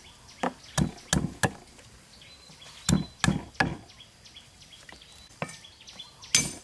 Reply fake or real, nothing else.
real